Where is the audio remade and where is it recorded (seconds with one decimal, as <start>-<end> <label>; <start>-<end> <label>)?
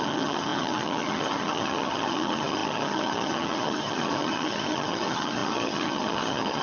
0.0-6.6 remade